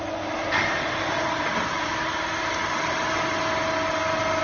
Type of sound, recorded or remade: recorded